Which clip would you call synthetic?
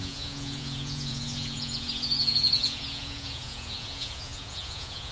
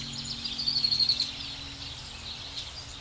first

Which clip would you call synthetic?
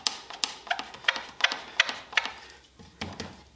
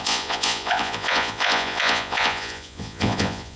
second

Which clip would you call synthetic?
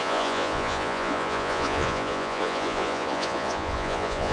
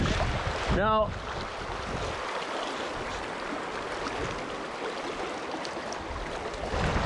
first